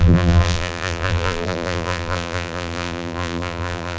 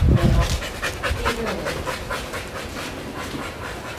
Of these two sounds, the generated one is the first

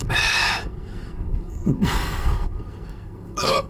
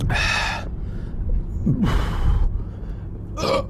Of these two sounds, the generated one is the first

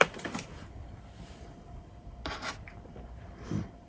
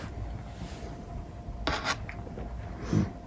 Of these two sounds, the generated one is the first